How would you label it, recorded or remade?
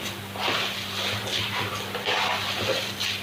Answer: recorded